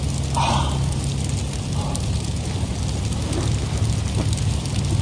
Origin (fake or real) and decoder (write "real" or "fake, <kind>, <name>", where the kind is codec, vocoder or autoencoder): real